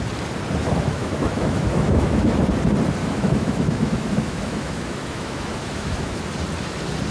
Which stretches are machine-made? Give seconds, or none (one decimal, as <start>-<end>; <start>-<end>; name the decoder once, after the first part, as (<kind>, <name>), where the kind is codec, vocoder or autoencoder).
0.6-2.4 (autoencoder, DAC-VAE); 3.0-6.2